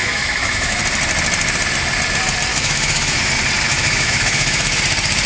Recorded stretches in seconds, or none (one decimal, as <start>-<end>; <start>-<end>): 0.8-2.5; 3.3-3.7; 4.8-5.3